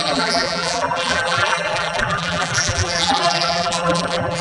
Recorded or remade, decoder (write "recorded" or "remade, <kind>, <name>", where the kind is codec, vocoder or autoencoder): remade, vocoder, BigVGAN v2